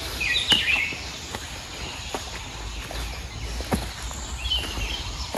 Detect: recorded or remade recorded